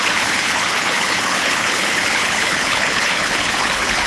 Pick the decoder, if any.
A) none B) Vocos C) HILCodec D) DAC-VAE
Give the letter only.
C